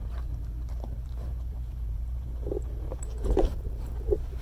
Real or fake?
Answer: fake